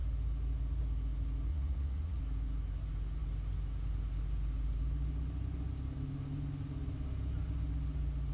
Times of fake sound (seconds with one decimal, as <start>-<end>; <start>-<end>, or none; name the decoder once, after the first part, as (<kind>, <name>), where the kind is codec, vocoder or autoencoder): 1.5-2.2 (vocoder, Vocos)